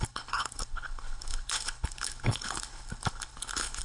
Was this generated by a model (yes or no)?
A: yes